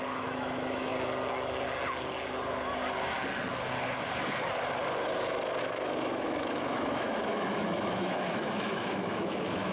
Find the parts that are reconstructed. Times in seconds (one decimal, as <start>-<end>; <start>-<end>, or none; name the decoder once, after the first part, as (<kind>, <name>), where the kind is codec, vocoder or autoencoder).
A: 0.0-0.9 (autoencoder, DAC-VAE); 5.6-9.7